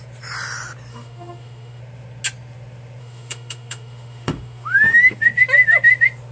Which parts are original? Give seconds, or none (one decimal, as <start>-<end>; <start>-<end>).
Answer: 0.0-0.9; 1.8-3.0; 5.2-6.3